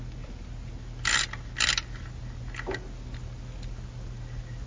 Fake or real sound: real